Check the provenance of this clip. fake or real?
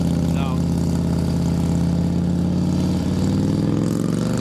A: real